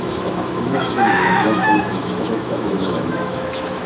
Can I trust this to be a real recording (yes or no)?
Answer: no